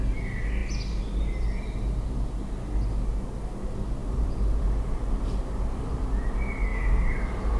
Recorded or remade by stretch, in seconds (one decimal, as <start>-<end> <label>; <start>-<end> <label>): 0.0-4.0 recorded; 4.0-6.0 remade; 6.0-6.7 recorded; 6.7-7.6 remade